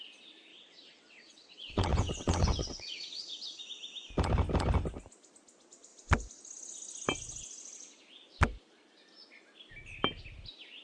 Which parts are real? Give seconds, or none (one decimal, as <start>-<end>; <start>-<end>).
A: 0.0-0.5; 3.6-10.8